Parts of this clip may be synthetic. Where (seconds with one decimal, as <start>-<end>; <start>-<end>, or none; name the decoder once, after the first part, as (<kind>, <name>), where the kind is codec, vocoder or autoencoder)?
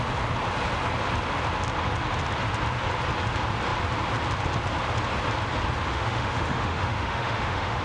5.9-7.8 (autoencoder, DAC-VAE)